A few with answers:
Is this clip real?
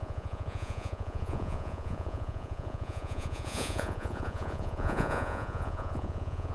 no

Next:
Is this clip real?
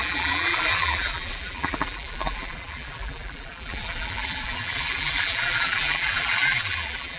no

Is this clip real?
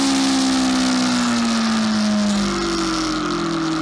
yes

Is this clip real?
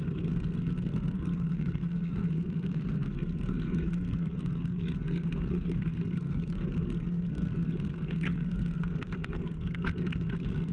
no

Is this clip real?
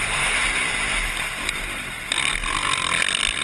yes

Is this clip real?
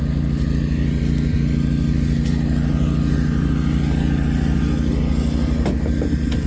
yes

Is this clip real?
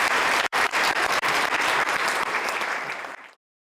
no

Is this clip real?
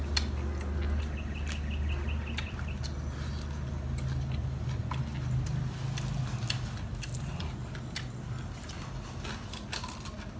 yes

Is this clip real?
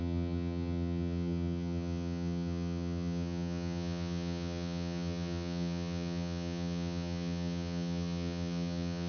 no